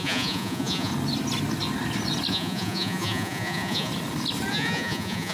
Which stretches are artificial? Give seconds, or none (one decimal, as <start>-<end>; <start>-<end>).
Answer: 0.0-0.9; 2.3-3.9; 4.5-5.3